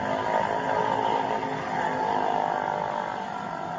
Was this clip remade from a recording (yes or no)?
no